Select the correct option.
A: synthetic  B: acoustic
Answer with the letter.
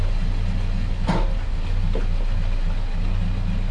B